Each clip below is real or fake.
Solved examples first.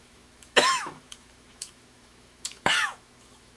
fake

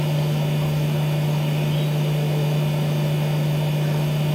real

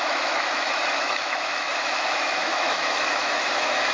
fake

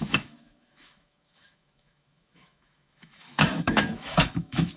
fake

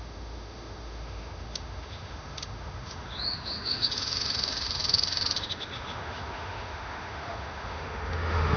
fake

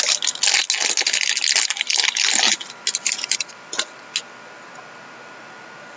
real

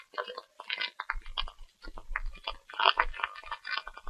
real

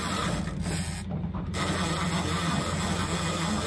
real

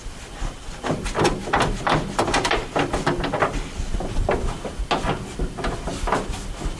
real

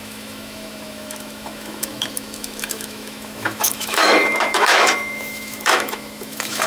fake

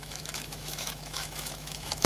fake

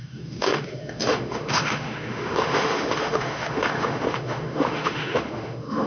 fake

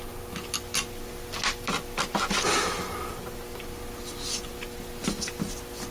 real